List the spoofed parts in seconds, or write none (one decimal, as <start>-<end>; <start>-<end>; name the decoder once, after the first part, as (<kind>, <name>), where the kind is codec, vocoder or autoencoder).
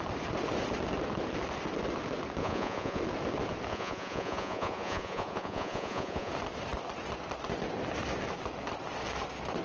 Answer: 2.4-3.0 (vocoder, Vocos); 3.7-6.3